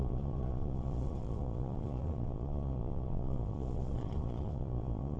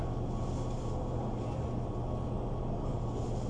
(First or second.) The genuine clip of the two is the second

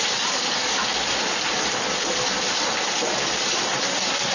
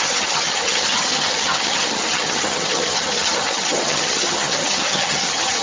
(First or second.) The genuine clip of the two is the first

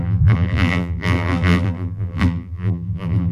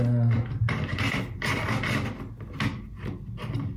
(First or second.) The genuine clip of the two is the second